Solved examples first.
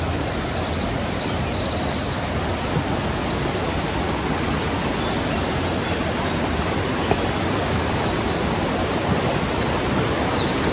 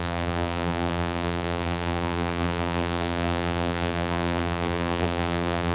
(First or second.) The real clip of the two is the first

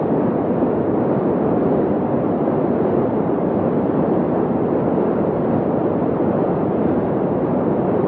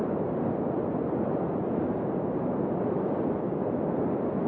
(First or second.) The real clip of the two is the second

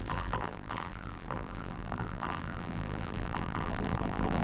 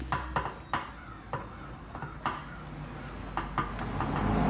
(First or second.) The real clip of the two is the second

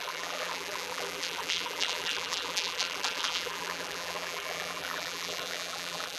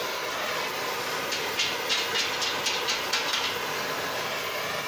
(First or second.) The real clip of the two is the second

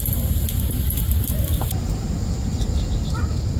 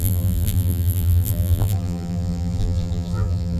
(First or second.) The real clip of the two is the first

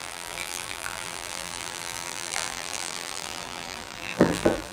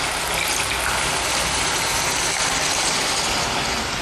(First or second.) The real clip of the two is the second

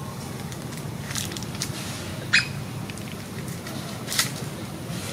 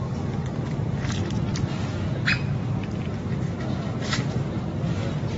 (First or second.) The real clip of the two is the second